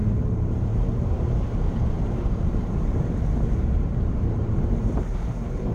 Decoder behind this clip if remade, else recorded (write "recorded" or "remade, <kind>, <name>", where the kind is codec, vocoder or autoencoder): remade, vocoder, BigVGAN v2